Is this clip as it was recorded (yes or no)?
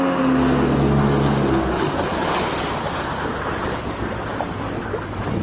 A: yes